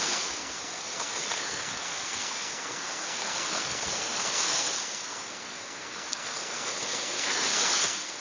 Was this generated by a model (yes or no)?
yes